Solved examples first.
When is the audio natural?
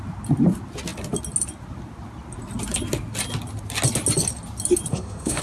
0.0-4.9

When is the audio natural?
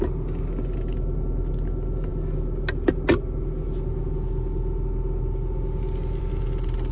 0.0-6.9